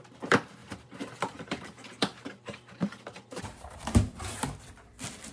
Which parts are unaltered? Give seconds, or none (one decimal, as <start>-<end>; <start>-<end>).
0.0-0.6; 3.8-5.3